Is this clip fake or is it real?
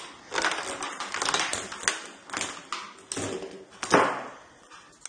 real